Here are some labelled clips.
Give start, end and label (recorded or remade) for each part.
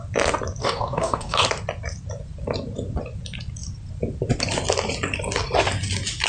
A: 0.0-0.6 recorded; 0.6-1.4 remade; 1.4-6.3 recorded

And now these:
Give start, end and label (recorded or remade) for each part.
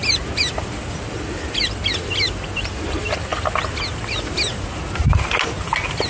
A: 0.0-6.1 recorded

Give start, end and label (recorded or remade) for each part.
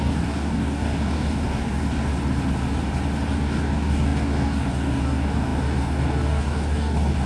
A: 0.0-2.1 remade; 2.1-3.3 recorded; 3.3-7.3 remade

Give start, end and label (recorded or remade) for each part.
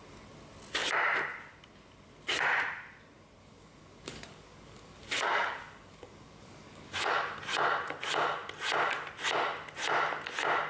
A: 0.0-3.4 recorded; 3.4-7.1 remade; 7.1-10.7 recorded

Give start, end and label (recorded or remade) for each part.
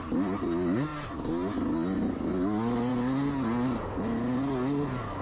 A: 0.0-5.2 recorded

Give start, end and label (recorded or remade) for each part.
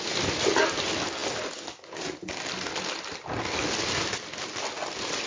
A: 0.0-5.3 recorded